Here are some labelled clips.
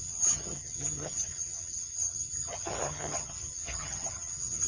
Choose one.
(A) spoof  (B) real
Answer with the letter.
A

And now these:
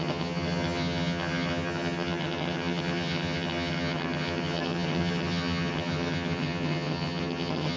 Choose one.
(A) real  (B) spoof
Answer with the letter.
B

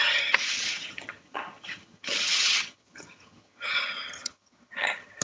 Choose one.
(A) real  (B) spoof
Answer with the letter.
B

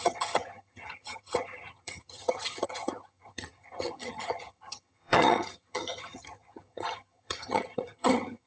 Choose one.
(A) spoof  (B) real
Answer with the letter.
A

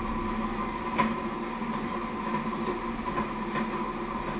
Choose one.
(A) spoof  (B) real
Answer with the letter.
B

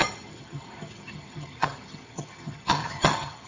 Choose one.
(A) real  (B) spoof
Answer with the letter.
B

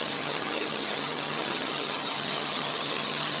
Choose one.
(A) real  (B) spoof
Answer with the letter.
B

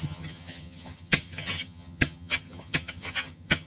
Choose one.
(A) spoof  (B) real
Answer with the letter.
A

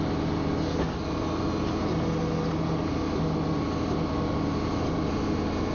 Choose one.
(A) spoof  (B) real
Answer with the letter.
B